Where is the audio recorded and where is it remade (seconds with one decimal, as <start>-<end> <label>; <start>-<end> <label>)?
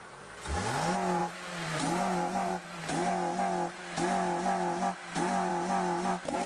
0.0-1.2 recorded; 1.2-3.1 remade; 3.1-6.5 recorded